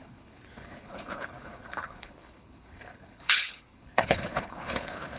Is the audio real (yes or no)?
no